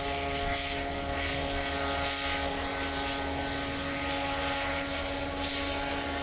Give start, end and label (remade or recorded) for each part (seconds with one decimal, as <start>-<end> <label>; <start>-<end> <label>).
0.0-6.2 recorded